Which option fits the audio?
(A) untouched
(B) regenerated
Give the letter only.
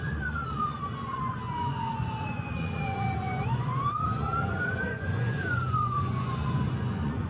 B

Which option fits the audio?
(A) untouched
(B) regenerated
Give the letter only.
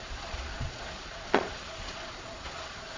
B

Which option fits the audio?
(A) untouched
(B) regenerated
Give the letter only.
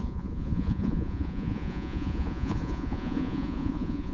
B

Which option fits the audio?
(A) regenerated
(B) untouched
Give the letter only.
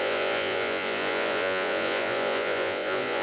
A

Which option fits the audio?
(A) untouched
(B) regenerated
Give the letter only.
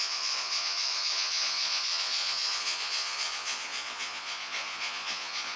B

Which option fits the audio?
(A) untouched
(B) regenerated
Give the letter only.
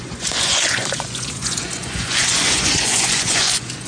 B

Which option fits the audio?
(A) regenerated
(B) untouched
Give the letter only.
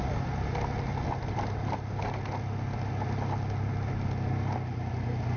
B